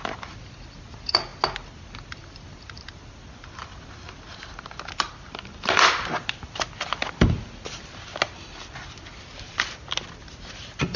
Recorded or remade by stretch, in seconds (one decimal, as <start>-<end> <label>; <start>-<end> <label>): 0.0-11.0 recorded